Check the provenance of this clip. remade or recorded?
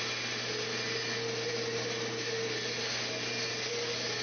recorded